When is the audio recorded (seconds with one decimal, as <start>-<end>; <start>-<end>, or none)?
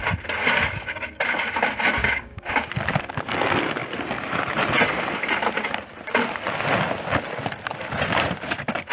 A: 0.0-0.4; 1.5-2.0; 2.7-8.9